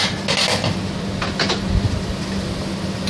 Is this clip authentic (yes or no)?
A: yes